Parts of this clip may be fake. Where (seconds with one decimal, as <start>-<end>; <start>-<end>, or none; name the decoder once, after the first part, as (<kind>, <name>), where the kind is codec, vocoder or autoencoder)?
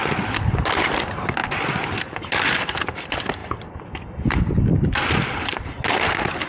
none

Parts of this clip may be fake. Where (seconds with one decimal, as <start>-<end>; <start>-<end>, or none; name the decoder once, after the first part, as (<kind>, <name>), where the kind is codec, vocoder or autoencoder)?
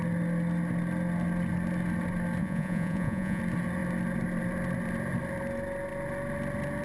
2.4-3.4 (vocoder, Vocos)